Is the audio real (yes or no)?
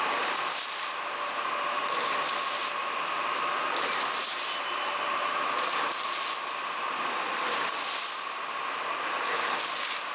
yes